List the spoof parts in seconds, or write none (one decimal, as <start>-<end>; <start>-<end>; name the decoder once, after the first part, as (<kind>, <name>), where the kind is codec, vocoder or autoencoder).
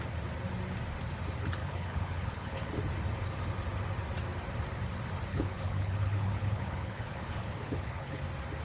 1.6-2.7 (codec, HILCodec); 5.3-8.2